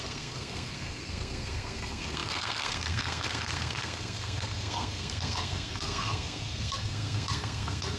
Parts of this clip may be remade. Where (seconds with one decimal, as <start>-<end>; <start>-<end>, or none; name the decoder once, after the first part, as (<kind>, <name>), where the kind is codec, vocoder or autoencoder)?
0.0-8.0 (codec, SNAC)